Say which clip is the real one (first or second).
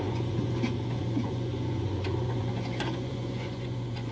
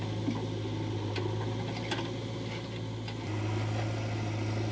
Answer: second